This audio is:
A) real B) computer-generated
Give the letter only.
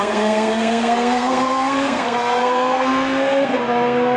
B